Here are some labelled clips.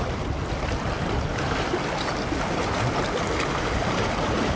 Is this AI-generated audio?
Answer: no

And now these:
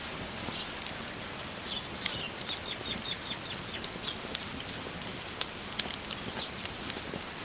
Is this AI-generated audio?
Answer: no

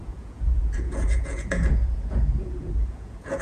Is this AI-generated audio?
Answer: yes